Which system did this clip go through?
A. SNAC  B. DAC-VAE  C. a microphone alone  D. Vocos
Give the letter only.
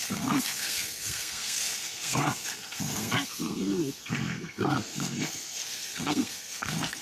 A